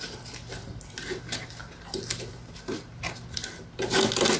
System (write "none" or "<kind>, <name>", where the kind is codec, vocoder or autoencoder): none